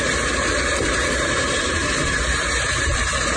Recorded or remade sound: remade